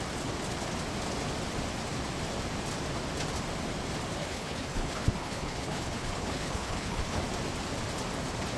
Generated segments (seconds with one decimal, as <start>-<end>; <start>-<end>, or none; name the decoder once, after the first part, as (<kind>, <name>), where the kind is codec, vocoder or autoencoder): 4.2-7.2 (codec, HILCodec)